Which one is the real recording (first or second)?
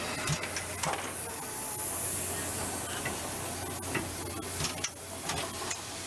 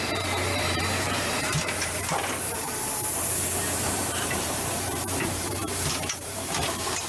first